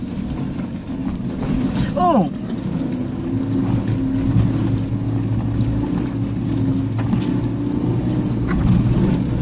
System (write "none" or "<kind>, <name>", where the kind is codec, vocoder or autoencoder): none